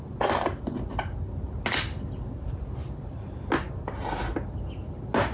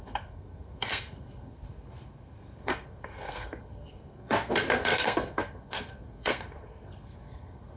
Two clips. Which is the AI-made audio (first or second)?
second